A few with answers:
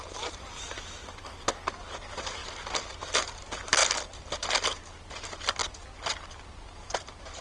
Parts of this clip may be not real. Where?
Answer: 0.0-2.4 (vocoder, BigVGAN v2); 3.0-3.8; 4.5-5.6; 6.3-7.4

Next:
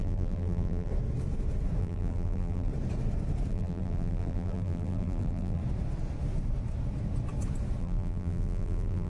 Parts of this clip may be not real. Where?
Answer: 0.0-0.9 (vocoder, BigVGAN v2); 1.8-2.7; 3.5-5.6; 7.8-9.1

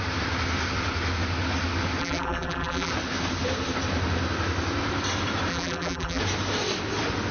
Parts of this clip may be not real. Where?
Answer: 2.0-2.9 (vocoder, BigVGAN v2); 5.5-6.2

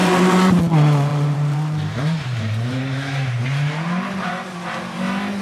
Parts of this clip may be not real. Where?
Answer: 0.0-0.6 (vocoder, BigVGAN v2); 1.1-4.3

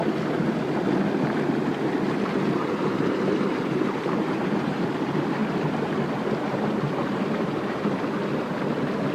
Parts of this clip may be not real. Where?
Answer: 2.8-4.9 (vocoder, BigVGAN v2)